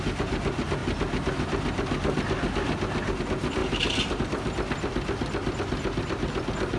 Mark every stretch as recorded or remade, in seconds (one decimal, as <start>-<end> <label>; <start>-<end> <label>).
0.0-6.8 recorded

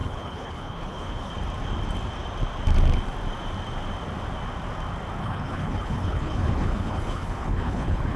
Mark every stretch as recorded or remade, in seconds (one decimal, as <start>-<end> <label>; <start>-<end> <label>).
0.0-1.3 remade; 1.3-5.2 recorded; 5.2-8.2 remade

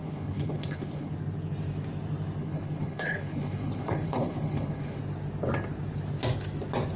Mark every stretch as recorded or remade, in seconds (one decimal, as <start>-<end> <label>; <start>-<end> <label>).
0.0-1.1 remade; 1.1-2.4 recorded; 2.4-5.0 remade; 5.0-7.0 recorded

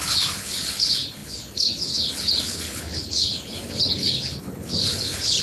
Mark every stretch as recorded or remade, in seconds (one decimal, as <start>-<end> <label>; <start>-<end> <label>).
0.0-5.4 remade

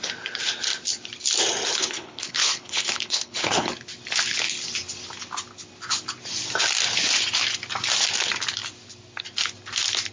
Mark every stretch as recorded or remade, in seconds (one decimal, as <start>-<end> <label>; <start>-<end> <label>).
0.0-1.7 recorded; 1.7-3.7 remade; 3.7-10.1 recorded

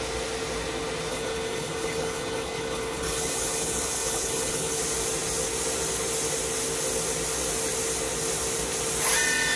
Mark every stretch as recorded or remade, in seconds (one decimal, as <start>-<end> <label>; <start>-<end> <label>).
0.0-1.1 recorded; 1.1-4.8 remade; 4.8-9.6 recorded

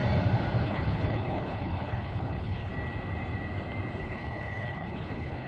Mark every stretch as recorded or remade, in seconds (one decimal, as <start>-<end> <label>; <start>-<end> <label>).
0.0-0.6 recorded; 0.6-2.7 remade; 2.7-4.0 recorded; 4.0-5.5 remade

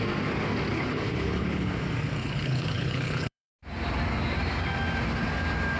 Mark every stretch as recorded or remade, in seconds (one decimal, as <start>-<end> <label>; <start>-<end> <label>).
0.0-0.7 recorded; 0.7-1.7 remade; 1.7-2.2 recorded; 2.2-3.5 remade; 3.5-5.8 recorded